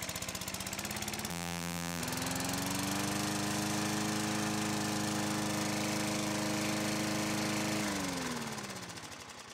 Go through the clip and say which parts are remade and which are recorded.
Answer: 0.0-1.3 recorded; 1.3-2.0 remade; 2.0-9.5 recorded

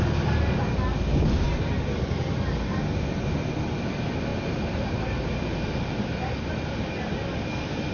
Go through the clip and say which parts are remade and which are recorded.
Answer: 0.0-4.3 recorded; 4.3-6.5 remade; 6.5-7.9 recorded

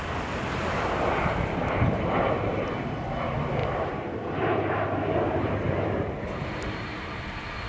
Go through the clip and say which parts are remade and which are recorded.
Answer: 0.0-3.6 recorded; 3.6-7.2 remade; 7.2-7.7 recorded